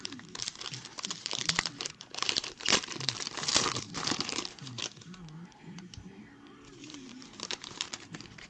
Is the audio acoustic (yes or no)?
no